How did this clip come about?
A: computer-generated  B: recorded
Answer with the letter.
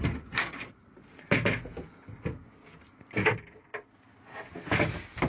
B